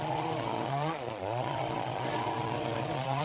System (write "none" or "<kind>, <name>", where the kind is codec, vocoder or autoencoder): vocoder, Vocos